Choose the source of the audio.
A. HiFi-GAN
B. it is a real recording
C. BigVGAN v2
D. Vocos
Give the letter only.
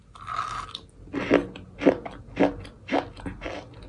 B